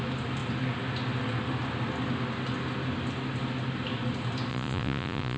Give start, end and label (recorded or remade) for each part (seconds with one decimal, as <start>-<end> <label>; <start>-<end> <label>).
0.0-4.5 recorded; 4.5-5.4 remade